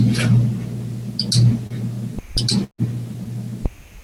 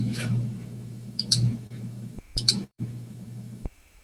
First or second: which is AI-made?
second